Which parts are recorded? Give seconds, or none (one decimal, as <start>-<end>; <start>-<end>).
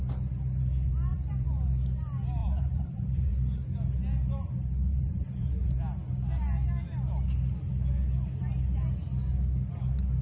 0.0-1.1; 1.7-2.4; 3.3-4.9; 5.5-10.2